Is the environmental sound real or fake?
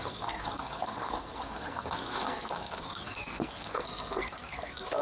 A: fake